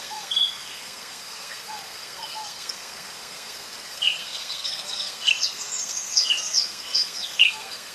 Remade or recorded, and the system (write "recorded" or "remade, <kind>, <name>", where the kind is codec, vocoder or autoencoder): remade, codec, SNAC